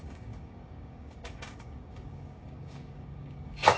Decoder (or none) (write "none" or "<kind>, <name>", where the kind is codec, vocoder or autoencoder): codec, DAC